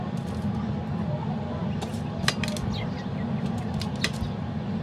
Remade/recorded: recorded